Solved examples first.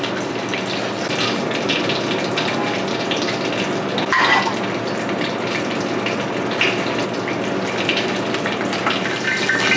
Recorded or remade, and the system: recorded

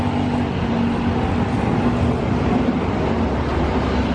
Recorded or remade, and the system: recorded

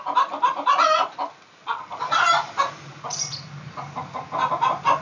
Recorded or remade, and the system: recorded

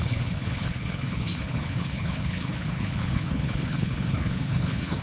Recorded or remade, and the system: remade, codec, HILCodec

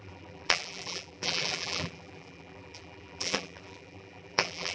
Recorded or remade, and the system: remade, vocoder, BigVGAN v2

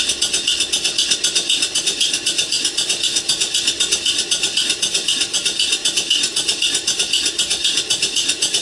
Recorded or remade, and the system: recorded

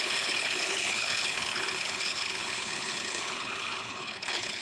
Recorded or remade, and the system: remade, codec, HILCodec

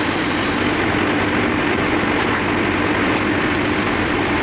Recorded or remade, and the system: recorded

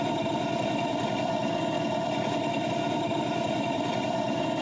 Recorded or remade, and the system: remade, vocoder, BigVGAN v2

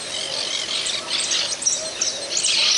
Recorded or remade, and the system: recorded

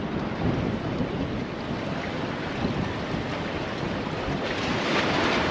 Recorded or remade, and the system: recorded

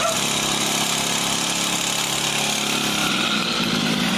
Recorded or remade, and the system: recorded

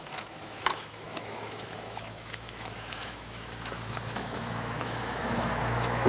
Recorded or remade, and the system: remade, autoencoder, DAC-VAE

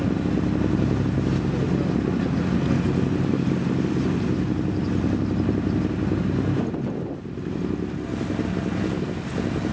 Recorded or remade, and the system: recorded